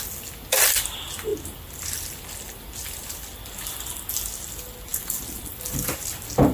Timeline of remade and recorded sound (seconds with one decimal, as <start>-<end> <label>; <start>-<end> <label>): 0.0-6.5 recorded